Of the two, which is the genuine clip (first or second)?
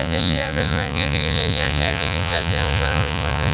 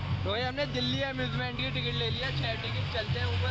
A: second